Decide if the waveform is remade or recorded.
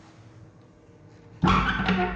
recorded